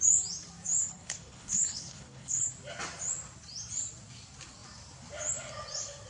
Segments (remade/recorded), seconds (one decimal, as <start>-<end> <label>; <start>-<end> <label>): 0.0-0.8 recorded; 0.8-2.5 remade; 2.5-6.1 recorded